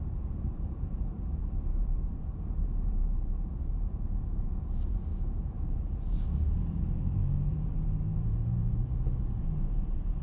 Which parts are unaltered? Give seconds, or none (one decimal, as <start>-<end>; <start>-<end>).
none